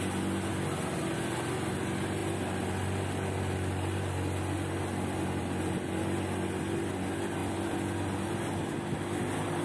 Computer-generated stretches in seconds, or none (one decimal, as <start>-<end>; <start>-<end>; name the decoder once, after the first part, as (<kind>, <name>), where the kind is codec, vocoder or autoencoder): none